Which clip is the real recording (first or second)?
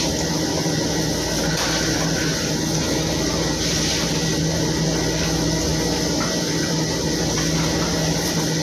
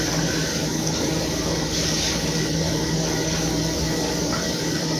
first